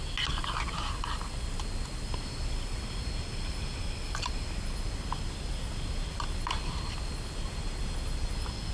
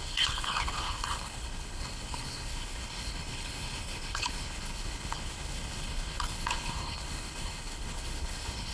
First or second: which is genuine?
first